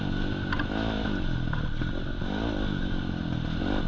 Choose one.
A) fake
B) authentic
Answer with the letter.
B